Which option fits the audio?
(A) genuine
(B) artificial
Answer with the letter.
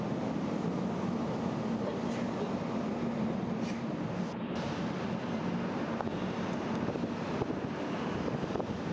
A